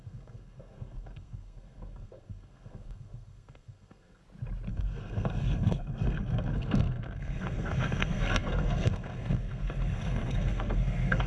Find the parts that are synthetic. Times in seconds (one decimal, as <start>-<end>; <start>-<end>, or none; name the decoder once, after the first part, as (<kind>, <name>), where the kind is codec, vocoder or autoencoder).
0.0-4.2 (codec, SNAC); 4.7-11.3